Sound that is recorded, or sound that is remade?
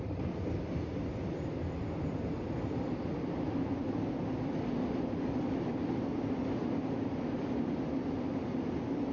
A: recorded